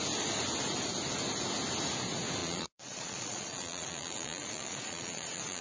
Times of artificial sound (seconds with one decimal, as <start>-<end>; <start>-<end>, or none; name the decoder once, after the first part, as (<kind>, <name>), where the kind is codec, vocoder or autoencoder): 2.4-5.6 (vocoder, Vocos)